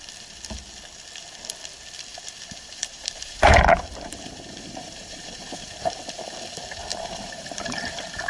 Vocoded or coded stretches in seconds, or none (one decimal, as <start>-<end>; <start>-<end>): 2.1-6.0; 6.9-7.8

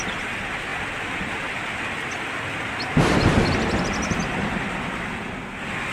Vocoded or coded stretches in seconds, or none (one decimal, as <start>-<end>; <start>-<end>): none

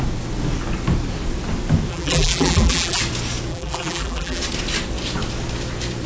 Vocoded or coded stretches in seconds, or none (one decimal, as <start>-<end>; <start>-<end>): 1.9-3.0; 3.5-4.4